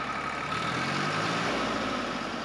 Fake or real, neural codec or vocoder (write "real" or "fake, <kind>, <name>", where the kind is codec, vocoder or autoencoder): real